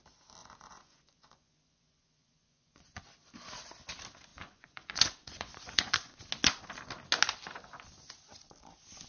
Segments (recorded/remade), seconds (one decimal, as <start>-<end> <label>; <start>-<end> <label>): 0.0-0.4 recorded; 0.4-3.0 remade; 3.0-4.3 recorded; 4.3-6.2 remade; 6.2-9.1 recorded